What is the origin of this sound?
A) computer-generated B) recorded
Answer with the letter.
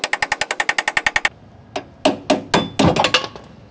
B